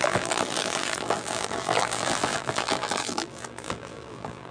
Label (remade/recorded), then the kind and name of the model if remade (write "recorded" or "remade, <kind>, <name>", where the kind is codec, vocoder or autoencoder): remade, vocoder, BigVGAN v2